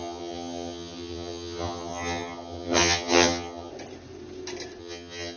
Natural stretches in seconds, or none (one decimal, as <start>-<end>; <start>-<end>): 3.7-4.8